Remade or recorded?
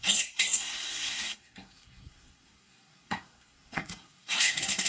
remade